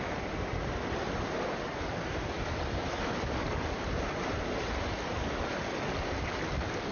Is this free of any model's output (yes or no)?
yes